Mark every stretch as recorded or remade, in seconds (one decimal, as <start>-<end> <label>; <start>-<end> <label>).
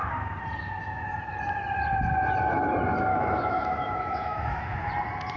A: 0.0-3.1 recorded; 3.1-4.9 remade; 4.9-5.4 recorded